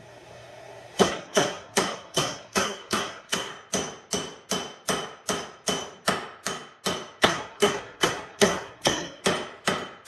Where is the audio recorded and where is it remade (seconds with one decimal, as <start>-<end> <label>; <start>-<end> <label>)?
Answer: 0.0-3.5 remade; 3.5-7.2 recorded; 7.2-9.2 remade; 9.2-10.1 recorded